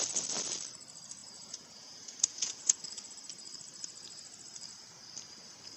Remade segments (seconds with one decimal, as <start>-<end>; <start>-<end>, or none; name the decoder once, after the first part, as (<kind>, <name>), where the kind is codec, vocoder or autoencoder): 1.2-2.8 (vocoder, Vocos)